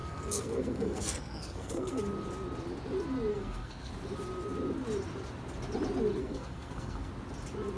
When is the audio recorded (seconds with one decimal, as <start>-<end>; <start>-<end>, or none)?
2.0-3.3; 3.9-6.2; 7.1-7.8